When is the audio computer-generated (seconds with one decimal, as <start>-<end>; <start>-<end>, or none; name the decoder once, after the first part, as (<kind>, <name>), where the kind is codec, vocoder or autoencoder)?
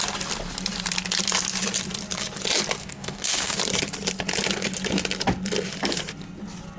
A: 2.8-3.6 (codec, DAC)